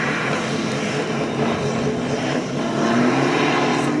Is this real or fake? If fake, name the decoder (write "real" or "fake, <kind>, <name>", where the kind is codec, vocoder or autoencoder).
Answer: real